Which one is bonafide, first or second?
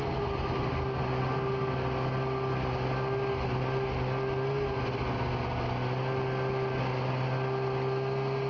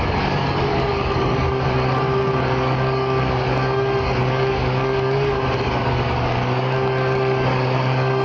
first